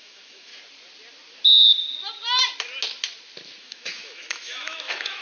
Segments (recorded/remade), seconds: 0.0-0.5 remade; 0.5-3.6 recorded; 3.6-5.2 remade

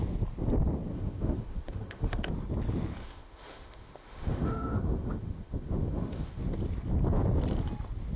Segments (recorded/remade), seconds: 0.0-0.9 recorded; 0.9-2.3 remade; 2.3-3.0 recorded; 3.0-6.4 remade; 6.4-8.2 recorded

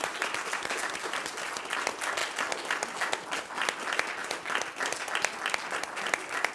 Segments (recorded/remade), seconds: 0.0-6.5 recorded

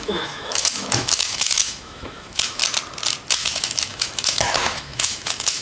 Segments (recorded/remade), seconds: 0.0-2.6 remade; 2.6-3.3 recorded; 3.3-5.6 remade

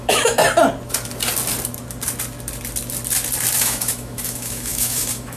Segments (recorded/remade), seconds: 0.0-0.4 remade; 0.4-3.6 recorded; 3.6-5.4 remade

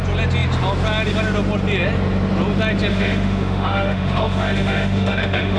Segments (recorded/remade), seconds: 0.0-2.9 recorded; 2.9-5.6 remade

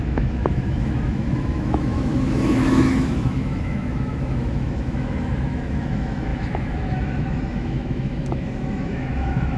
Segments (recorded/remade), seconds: 0.0-9.6 remade

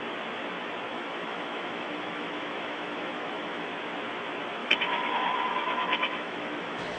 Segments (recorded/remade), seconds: 0.0-0.9 recorded; 0.9-3.7 remade; 3.7-4.6 recorded; 4.6-7.0 remade